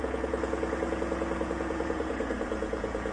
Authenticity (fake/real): fake